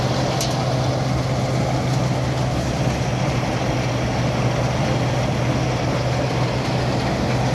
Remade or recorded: recorded